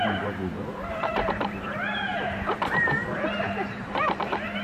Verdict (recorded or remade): remade